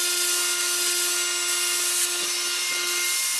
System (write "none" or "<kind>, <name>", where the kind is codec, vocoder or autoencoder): none